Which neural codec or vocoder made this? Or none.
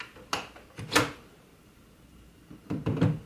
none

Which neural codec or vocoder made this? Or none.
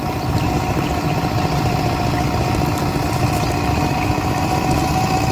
none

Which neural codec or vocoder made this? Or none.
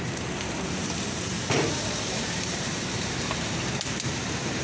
vocoder, BigVGAN v2